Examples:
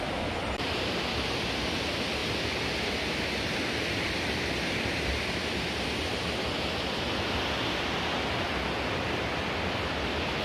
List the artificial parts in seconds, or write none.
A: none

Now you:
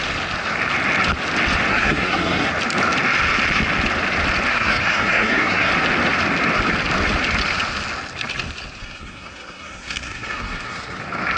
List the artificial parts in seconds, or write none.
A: 1.7-2.5 (codec, SNAC); 4.5-5.7; 8.8-11.0

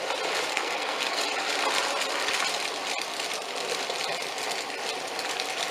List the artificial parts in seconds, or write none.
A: 0.5-1.2 (codec, SNAC)

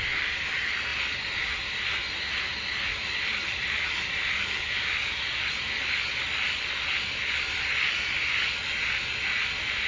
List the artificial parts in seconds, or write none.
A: none